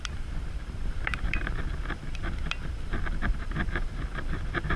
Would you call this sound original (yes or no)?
no